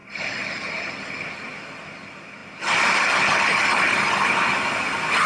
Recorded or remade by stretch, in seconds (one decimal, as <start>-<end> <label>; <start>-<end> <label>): 0.0-5.3 recorded